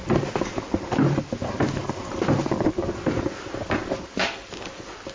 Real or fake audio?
real